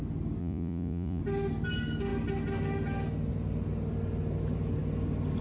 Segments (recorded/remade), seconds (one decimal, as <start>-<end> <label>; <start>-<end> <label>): 0.0-0.4 recorded; 0.4-1.2 remade; 1.2-5.4 recorded